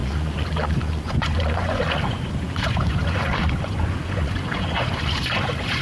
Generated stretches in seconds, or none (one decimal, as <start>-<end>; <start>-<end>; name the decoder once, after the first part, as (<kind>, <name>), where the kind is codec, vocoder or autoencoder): 0.0-5.8 (vocoder, Vocos)